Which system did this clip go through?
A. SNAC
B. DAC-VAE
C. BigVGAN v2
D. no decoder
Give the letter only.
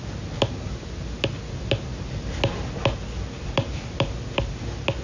D